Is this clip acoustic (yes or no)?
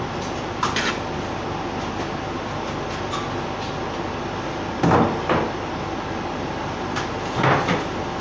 yes